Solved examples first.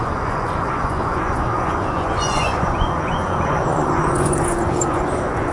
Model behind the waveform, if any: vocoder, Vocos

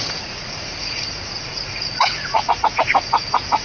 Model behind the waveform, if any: vocoder, Vocos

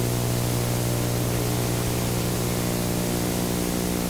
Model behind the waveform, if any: none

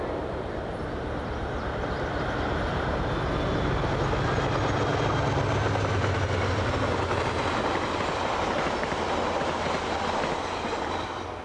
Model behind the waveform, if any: none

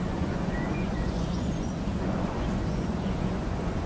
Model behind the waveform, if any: vocoder, Vocos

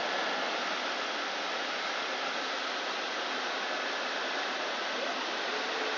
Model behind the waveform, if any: none